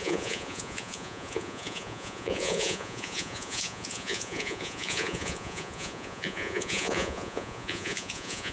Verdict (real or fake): fake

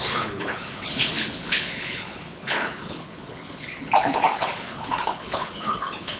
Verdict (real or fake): fake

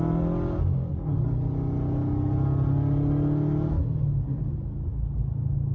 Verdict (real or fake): real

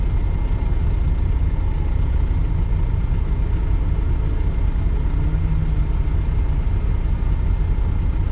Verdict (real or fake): real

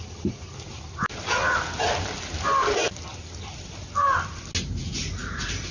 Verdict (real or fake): real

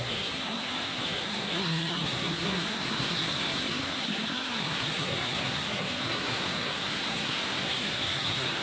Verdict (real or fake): fake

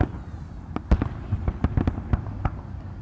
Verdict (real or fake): real